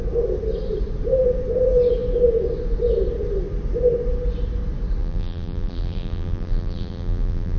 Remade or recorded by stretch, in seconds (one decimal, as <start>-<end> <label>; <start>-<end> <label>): 0.0-5.0 recorded; 5.0-7.6 remade